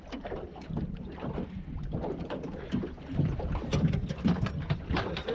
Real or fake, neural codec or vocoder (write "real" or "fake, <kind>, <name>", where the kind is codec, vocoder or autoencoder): real